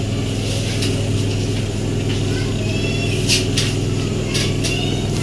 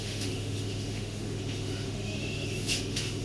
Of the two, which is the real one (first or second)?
first